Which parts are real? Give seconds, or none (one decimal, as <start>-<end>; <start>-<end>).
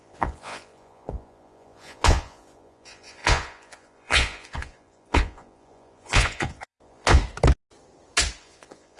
7.2-8.4